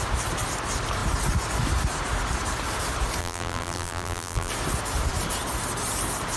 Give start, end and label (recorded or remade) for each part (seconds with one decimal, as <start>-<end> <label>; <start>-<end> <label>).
0.0-3.2 recorded; 3.2-4.5 remade; 4.5-6.4 recorded